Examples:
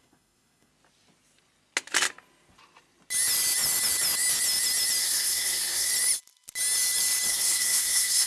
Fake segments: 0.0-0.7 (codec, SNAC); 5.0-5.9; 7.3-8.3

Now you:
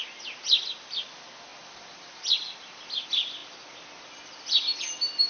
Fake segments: none

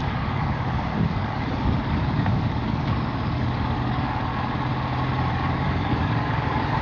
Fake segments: 0.0-4.3 (codec, DAC); 5.3-6.8

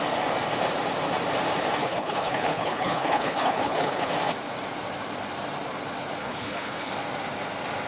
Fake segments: 1.8-4.1 (codec, HILCodec); 6.2-6.9